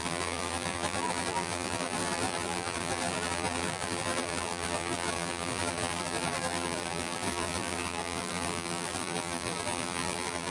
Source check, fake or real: fake